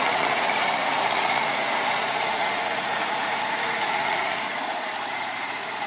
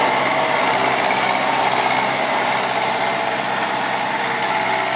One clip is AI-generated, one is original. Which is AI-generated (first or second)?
first